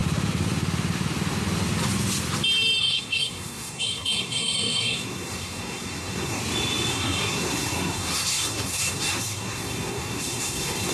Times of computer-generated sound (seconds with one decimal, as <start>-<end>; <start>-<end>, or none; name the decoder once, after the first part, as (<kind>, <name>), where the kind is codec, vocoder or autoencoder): 2.8-6.4 (codec, SNAC); 6.9-10.9